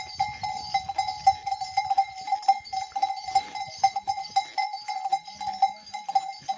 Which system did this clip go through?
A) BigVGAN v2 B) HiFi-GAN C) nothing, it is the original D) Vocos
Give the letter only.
C